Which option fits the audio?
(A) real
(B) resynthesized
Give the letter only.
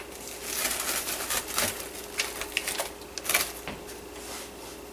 A